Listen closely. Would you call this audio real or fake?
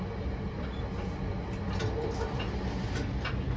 real